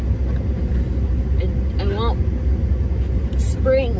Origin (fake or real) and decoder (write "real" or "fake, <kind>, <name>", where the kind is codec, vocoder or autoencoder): real